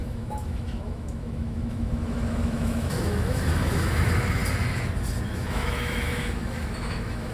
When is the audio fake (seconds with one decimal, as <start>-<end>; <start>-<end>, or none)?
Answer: 0.0-4.4; 5.2-7.3